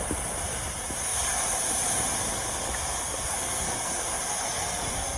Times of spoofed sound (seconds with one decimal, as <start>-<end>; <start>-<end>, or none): 3.0-5.2